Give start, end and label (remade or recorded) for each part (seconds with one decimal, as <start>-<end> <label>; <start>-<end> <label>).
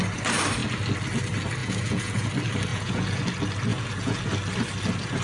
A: 0.0-1.6 recorded; 1.6-2.3 remade; 2.3-2.7 recorded; 2.7-3.2 remade; 3.2-3.7 recorded; 3.7-4.2 remade; 4.2-5.2 recorded